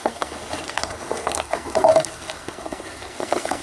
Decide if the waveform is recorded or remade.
remade